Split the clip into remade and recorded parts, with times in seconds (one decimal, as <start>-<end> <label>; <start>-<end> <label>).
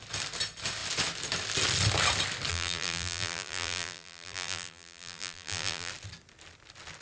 0.0-2.5 recorded; 2.5-5.9 remade; 5.9-7.0 recorded